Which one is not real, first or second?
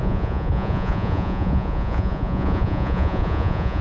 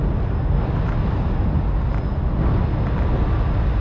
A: first